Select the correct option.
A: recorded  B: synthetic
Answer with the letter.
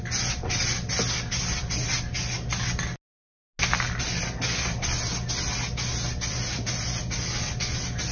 A